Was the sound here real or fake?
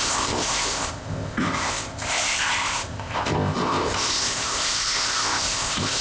fake